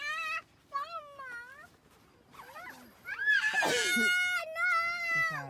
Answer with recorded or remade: recorded